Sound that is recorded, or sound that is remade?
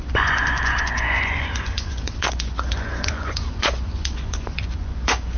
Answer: remade